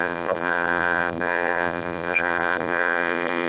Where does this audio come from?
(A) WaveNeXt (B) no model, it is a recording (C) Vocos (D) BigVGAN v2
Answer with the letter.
D